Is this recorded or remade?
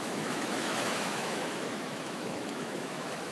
remade